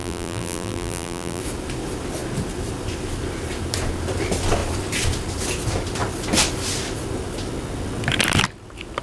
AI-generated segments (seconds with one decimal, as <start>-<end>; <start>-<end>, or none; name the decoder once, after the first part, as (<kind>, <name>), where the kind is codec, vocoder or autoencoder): 0.0-1.4 (vocoder, BigVGAN v2)